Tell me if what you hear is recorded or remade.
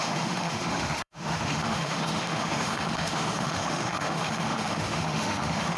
remade